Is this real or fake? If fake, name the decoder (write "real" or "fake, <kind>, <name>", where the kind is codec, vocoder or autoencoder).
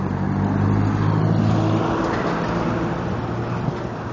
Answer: real